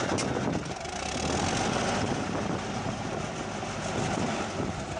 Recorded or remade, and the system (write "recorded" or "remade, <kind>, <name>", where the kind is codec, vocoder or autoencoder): recorded